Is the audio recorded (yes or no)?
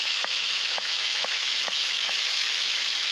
no